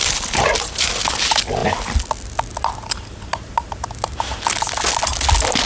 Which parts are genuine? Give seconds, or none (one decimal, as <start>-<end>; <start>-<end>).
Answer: 0.0-5.7